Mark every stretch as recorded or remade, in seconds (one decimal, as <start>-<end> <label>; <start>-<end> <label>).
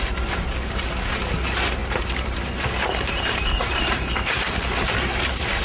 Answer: 0.0-1.8 recorded; 1.8-4.4 remade; 4.4-5.6 recorded